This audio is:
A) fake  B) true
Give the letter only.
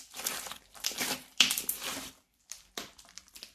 A